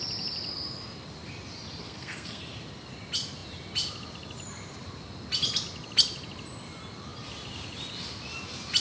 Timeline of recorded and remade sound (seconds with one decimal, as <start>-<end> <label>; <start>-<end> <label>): 0.0-1.8 recorded; 1.8-2.4 remade; 2.4-8.8 recorded